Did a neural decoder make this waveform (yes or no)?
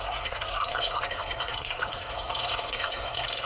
yes